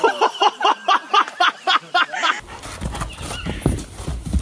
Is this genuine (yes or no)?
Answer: yes